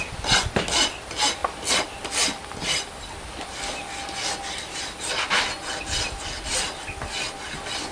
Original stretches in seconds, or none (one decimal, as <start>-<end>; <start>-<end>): 0.0-7.9